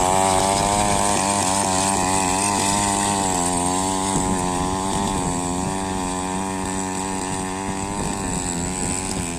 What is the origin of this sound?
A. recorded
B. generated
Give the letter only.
A